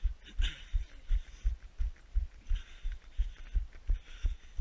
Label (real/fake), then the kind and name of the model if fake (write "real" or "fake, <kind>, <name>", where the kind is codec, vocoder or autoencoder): real